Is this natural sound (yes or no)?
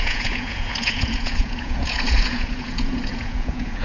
no